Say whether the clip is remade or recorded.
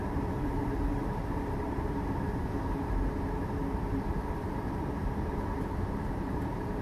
remade